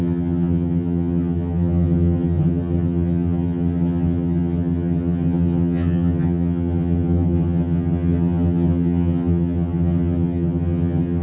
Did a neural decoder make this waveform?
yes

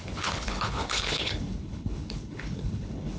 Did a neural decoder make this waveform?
yes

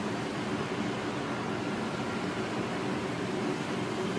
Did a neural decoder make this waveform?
no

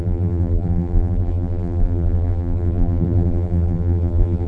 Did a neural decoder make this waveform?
yes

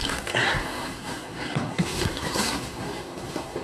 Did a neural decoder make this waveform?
yes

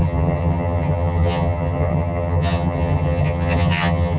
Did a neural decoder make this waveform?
yes